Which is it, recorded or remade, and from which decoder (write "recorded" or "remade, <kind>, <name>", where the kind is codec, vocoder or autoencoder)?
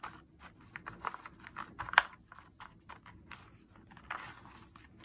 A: recorded